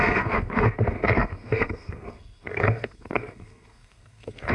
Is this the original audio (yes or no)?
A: no